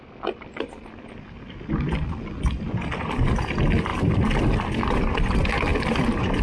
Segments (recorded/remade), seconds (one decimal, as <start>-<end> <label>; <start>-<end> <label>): 0.0-6.4 recorded